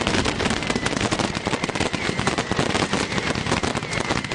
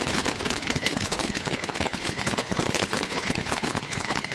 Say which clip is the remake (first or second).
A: second